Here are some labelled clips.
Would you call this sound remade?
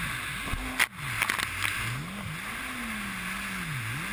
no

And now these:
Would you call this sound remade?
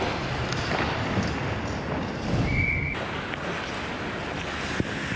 no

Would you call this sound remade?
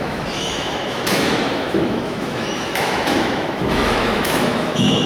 yes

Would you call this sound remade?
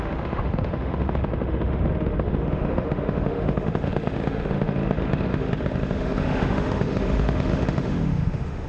yes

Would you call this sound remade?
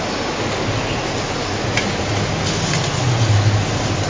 no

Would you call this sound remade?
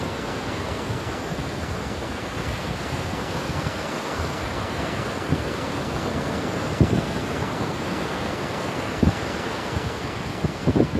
yes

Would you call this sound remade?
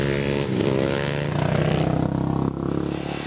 no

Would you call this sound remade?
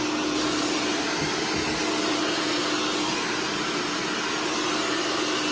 no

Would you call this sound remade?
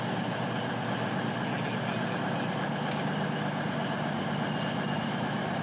no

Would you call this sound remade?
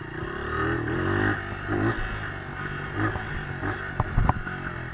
no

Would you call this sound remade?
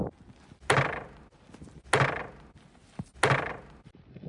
no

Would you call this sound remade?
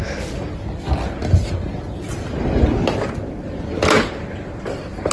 no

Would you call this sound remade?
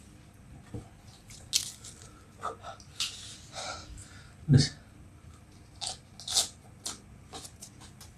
no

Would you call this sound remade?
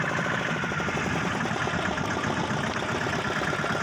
no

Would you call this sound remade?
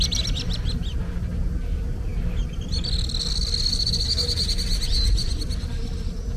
no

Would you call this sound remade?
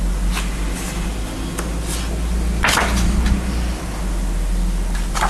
no